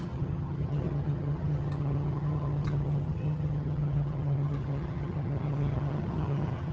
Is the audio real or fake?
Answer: fake